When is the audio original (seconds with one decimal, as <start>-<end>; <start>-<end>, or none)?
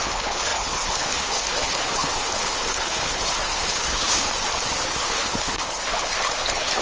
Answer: 4.2-4.8